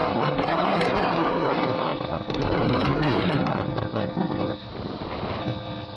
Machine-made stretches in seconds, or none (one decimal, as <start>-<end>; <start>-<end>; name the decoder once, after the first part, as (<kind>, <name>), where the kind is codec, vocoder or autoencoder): 0.0-4.7 (codec, SNAC); 5.4-6.0

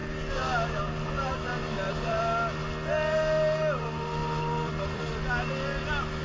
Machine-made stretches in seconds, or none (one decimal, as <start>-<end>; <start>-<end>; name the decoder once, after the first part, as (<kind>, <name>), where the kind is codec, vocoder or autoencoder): 1.6-2.2 (vocoder, BigVGAN v2); 4.2-5.1

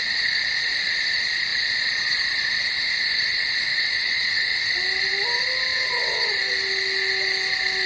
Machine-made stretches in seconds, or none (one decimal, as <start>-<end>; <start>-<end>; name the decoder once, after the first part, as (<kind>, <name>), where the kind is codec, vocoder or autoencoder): 3.7-4.6 (vocoder, WaveNeXt); 5.7-6.2

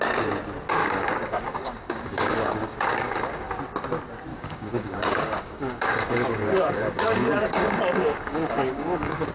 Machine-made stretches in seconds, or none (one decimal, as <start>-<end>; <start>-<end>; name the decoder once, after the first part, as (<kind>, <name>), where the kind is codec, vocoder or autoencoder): 0.8-3.5 (codec, DAC); 4.3-9.3

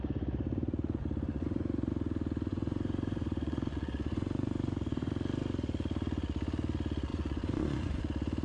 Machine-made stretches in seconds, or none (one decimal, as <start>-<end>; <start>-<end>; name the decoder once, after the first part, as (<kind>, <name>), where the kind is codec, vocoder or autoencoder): 1.3-1.9 (vocoder, Vocos); 2.5-5.1; 7.1-8.0

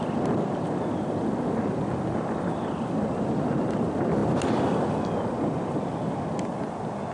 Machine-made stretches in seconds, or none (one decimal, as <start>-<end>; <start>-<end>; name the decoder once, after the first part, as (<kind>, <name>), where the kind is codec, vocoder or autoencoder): none

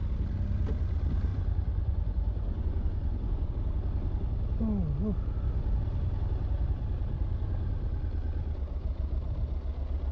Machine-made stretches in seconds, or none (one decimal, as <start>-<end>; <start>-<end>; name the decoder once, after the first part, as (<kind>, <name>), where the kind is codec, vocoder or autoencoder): 1.3-3.5 (vocoder, Vocos)